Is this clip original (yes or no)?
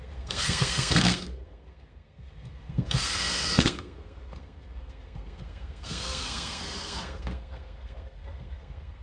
no